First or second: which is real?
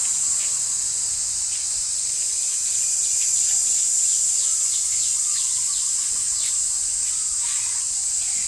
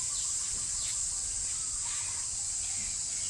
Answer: second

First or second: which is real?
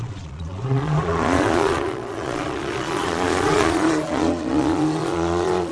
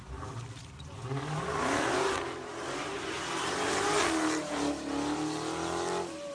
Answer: second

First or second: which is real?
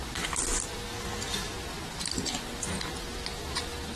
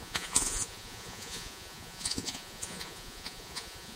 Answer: first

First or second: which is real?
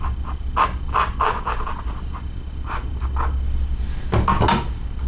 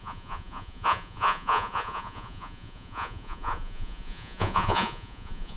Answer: first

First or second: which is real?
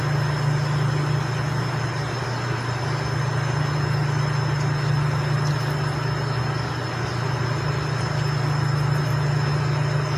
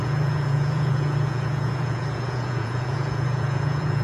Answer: first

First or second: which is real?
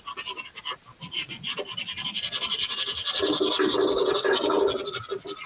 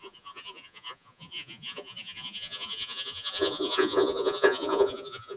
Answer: first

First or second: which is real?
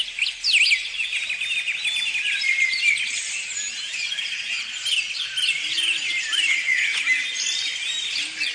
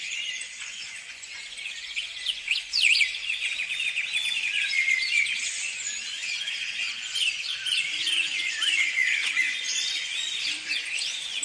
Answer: first